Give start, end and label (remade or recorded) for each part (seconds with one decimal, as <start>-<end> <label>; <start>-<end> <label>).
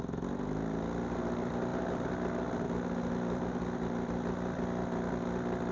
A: 0.0-5.7 recorded